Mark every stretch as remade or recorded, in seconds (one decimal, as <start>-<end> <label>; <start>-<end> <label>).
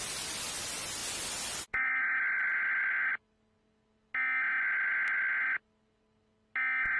0.0-1.0 recorded; 1.0-3.1 remade; 3.1-7.0 recorded